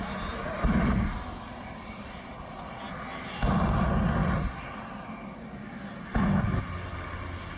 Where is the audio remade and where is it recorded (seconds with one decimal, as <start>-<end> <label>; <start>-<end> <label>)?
0.0-7.6 recorded